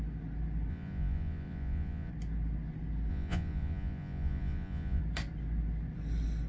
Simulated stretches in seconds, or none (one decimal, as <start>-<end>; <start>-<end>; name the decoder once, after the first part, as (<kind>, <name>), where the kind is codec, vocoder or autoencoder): 0.7-2.1 (vocoder, Vocos); 3.1-5.0